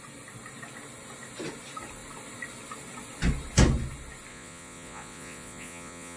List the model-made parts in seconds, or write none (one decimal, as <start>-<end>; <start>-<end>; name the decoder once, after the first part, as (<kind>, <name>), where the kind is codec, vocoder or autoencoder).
4.3-6.2 (vocoder, Vocos)